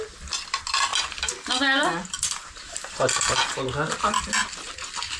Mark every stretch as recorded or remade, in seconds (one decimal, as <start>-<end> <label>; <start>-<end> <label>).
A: 0.0-5.2 recorded